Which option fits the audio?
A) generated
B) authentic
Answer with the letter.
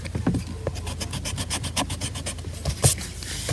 B